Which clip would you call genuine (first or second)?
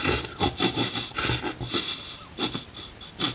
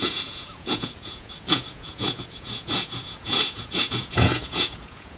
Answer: first